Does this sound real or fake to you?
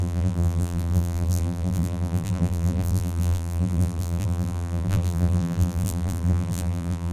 fake